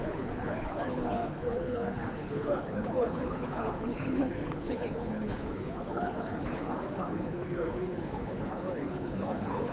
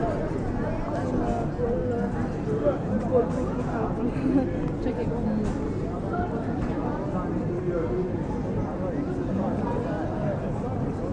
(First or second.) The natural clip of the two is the second